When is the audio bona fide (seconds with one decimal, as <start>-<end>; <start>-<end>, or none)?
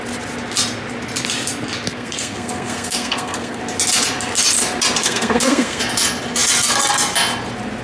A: 0.0-1.9; 3.6-5.0; 5.8-7.8